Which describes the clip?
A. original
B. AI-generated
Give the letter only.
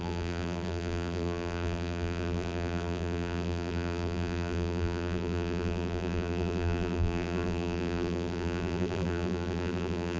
B